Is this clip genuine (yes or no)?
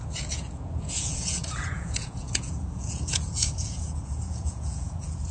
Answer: no